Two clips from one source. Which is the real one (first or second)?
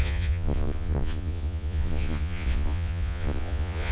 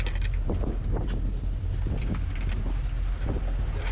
second